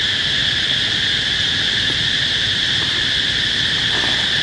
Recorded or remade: recorded